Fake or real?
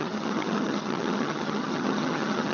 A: fake